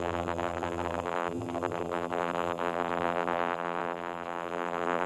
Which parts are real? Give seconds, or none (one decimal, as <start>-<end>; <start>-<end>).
none